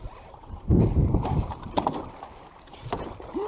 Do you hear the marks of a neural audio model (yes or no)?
yes